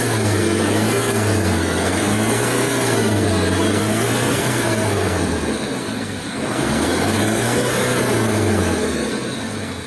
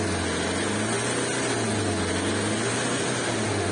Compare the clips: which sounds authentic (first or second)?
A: second